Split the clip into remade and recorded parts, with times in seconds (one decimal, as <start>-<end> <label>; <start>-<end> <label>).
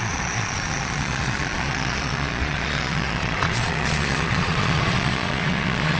0.0-6.0 remade